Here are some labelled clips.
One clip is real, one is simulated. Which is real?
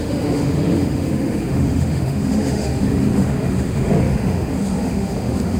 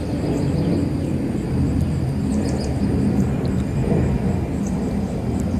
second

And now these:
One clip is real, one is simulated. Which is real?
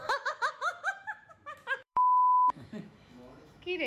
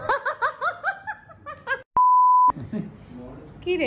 second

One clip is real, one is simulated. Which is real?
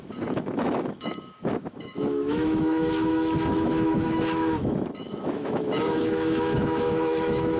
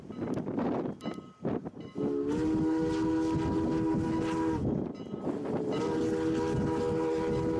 second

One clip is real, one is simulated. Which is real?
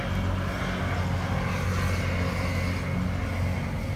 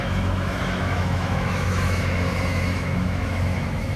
first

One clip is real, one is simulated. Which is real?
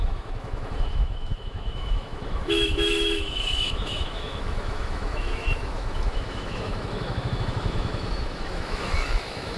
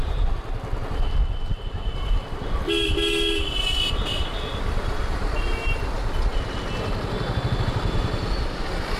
second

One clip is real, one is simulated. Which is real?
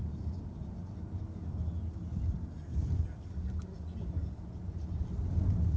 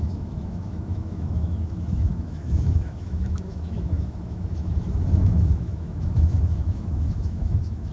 first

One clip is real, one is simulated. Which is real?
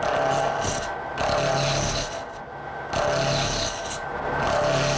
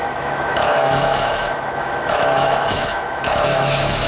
first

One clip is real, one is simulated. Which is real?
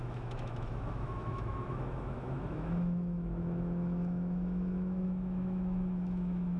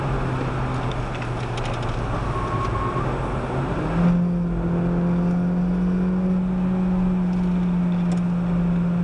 second